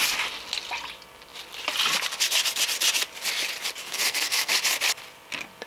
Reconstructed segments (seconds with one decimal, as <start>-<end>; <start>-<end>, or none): 3.8-4.5